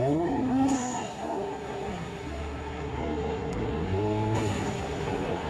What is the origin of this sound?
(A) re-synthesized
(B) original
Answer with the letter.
A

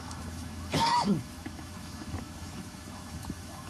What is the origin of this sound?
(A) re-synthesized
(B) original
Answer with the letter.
A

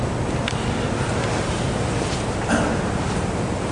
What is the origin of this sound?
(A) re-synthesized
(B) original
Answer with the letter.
B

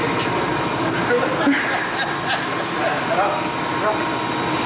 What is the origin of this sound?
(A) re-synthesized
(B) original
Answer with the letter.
B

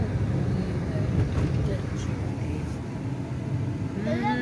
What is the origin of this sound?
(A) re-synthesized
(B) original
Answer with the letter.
B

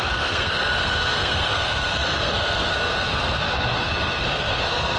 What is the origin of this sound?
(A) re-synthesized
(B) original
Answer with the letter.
A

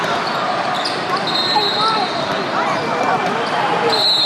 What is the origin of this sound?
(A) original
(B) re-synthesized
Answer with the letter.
A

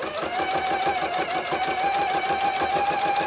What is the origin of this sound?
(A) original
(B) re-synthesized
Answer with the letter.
A